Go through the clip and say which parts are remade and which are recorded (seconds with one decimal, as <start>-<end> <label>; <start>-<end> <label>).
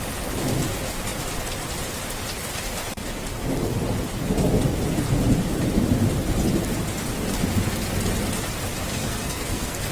0.0-8.9 recorded; 8.9-9.9 remade